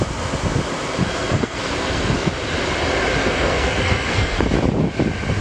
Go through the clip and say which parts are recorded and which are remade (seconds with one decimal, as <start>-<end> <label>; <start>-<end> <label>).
0.0-1.0 recorded; 1.0-2.3 remade; 2.3-3.2 recorded; 3.2-4.5 remade; 4.5-5.4 recorded